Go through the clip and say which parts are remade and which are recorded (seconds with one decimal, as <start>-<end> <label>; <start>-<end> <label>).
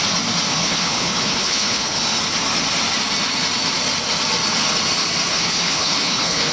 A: 0.0-0.5 recorded; 0.5-2.2 remade; 2.2-5.3 recorded; 5.3-6.5 remade